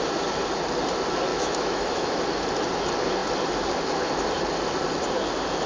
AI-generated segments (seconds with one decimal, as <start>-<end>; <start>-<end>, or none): 1.3-2.1